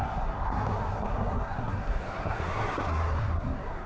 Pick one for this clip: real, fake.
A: fake